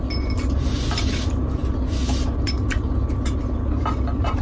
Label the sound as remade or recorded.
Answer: recorded